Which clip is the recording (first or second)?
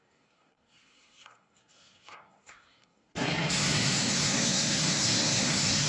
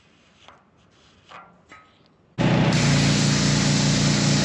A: second